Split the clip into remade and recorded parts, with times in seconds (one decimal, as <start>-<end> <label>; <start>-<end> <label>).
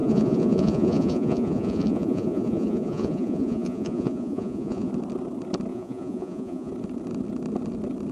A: 0.0-4.9 remade; 4.9-5.7 recorded; 5.7-6.7 remade; 6.7-8.1 recorded